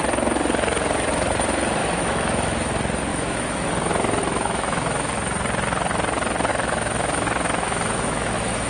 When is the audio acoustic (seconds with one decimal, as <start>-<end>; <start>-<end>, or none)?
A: 0.0-1.8; 2.7-3.1; 3.7-4.2; 5.1-6.5